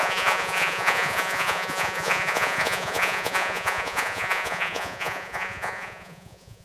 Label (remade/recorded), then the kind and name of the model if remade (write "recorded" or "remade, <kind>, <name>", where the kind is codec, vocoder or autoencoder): remade, vocoder, Vocos